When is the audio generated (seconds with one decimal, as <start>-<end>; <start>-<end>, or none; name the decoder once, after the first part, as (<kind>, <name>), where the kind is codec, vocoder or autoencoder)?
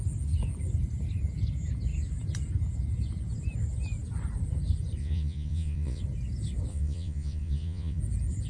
5.0-6.0 (vocoder, Vocos); 6.7-8.0